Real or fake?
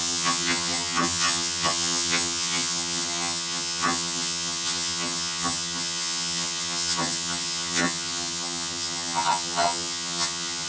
fake